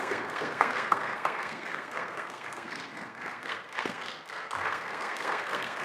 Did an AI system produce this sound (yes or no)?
yes